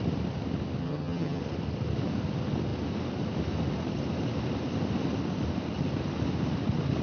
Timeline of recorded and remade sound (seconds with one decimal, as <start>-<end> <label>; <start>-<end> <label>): 0.0-0.8 recorded; 0.8-1.4 remade; 1.4-7.0 recorded

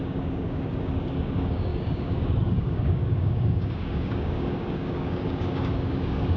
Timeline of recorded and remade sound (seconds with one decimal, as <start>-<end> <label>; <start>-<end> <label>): 0.0-6.4 remade

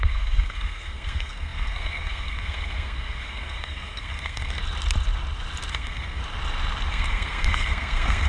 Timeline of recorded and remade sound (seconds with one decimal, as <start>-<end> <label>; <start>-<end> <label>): 0.0-4.6 remade; 4.6-5.7 recorded; 5.7-6.2 remade; 6.2-6.9 recorded; 6.9-8.3 remade

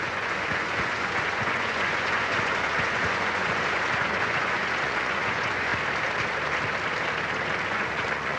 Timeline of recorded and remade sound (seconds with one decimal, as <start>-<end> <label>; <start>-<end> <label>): 0.0-5.7 remade; 5.7-7.7 recorded; 7.7-8.4 remade

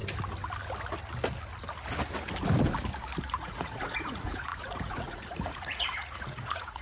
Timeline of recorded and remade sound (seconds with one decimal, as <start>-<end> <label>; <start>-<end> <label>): 0.0-3.2 recorded; 3.2-6.8 remade

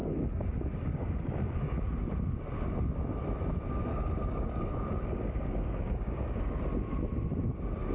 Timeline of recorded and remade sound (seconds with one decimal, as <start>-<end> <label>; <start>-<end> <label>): 0.0-1.8 remade; 1.8-3.9 recorded; 3.9-6.6 remade; 6.6-7.9 recorded